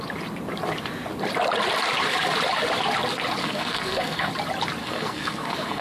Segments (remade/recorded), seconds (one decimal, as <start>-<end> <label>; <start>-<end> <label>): 0.0-3.4 recorded; 3.4-4.3 remade; 4.3-4.8 recorded; 4.8-5.8 remade